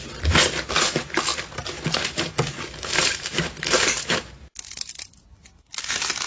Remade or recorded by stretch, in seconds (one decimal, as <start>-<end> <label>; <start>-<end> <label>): 0.0-1.3 recorded; 1.3-4.4 remade; 4.4-6.3 recorded